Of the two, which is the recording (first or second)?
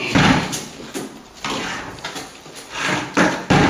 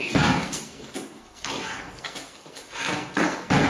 first